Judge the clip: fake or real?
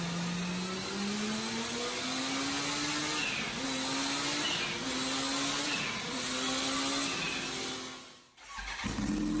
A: real